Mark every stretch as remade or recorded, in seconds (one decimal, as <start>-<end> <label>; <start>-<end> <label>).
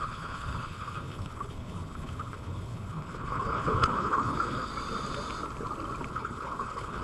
0.0-4.7 remade; 4.7-6.1 recorded; 6.1-7.0 remade